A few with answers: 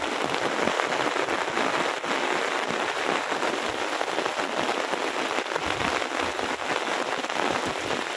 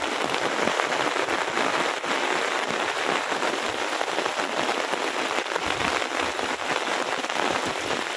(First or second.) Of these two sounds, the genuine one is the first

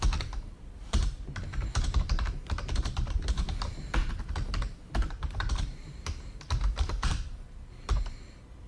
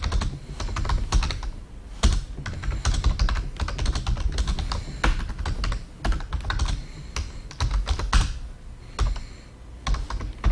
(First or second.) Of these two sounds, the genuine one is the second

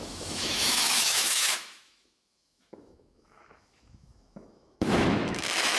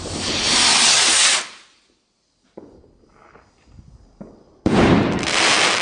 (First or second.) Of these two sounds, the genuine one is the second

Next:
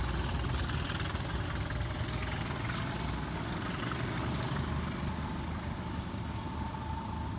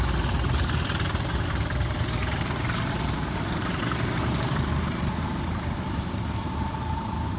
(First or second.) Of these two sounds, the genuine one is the first